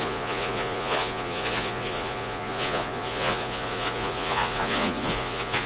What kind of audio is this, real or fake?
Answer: fake